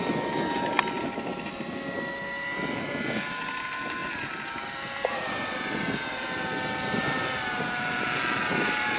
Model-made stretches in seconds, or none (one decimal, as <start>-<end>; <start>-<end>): none